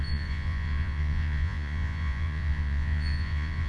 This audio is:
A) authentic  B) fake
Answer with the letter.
B